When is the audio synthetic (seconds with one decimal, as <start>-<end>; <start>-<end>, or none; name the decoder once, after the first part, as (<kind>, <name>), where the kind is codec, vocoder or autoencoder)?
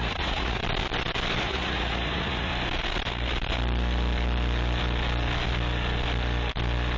0.0-0.6 (vocoder, Vocos); 1.4-2.5